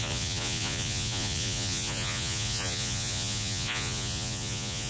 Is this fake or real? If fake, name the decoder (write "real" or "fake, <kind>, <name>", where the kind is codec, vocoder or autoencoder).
fake, vocoder, Vocos